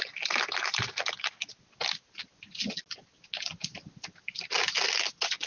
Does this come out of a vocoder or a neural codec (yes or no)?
no